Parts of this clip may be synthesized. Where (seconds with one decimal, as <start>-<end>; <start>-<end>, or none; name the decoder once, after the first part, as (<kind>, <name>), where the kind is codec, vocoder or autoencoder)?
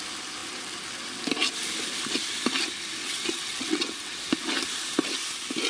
3.0-4.2 (vocoder, WaveNeXt)